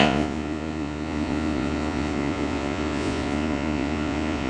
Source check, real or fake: fake